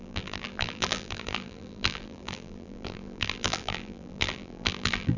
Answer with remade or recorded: remade